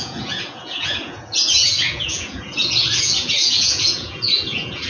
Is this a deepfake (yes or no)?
yes